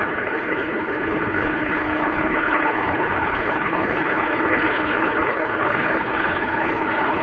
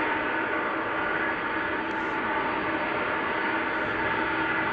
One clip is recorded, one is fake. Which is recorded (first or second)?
second